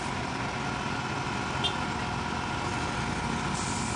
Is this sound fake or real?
real